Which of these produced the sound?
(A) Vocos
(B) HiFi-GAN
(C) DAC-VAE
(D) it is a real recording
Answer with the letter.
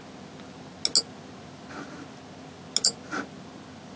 D